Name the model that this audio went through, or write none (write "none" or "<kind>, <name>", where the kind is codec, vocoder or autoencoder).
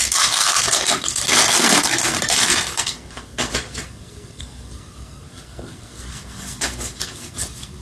codec, SNAC